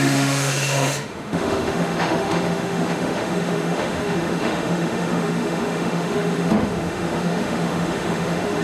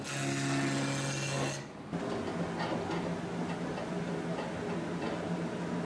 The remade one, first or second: first